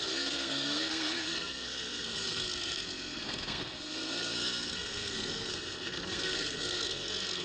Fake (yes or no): yes